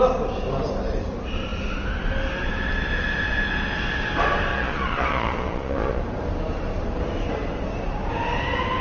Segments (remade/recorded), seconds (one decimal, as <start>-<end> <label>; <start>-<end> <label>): 0.0-4.5 recorded; 4.5-6.0 remade; 6.0-8.8 recorded

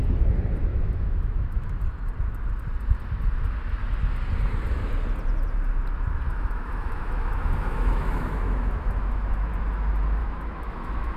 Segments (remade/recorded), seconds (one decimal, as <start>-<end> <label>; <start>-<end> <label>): 0.0-0.7 recorded; 0.7-1.8 remade; 1.8-6.3 recorded; 6.3-9.5 remade; 9.5-10.2 recorded; 10.2-11.2 remade

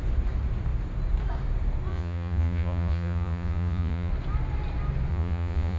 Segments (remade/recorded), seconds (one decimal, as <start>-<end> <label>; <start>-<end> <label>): 0.0-1.9 recorded; 1.9-4.1 remade; 4.1-5.1 recorded; 5.1-5.8 remade

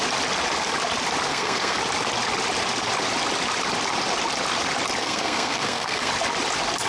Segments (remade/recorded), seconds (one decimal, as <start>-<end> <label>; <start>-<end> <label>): 0.0-1.3 recorded; 1.3-1.8 remade; 1.8-5.0 recorded; 5.0-6.1 remade; 6.1-6.9 recorded

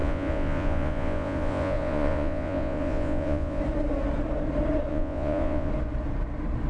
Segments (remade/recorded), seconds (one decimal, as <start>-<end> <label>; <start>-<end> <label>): 0.0-3.6 remade; 3.6-4.9 recorded; 4.9-5.7 remade; 5.7-6.7 recorded